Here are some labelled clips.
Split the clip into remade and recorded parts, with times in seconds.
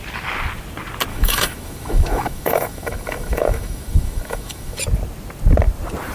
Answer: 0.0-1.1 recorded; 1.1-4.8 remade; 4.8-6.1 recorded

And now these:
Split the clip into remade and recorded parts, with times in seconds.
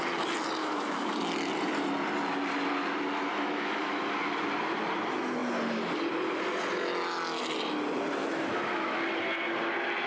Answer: 0.0-0.6 recorded; 0.6-1.1 remade; 1.1-3.3 recorded; 3.3-3.9 remade; 3.9-8.2 recorded; 8.2-9.0 remade; 9.0-10.1 recorded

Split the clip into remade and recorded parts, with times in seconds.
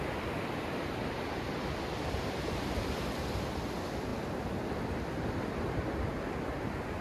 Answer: 0.0-7.0 recorded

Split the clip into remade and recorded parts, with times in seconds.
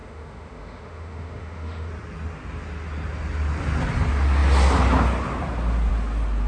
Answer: 0.0-1.9 remade; 1.9-6.5 recorded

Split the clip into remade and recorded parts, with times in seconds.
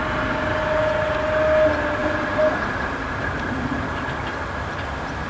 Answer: 0.0-5.3 recorded